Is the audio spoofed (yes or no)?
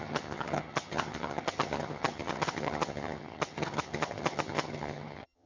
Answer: yes